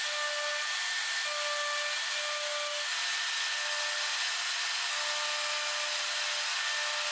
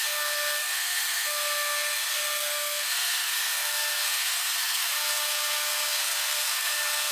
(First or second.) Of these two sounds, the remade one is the second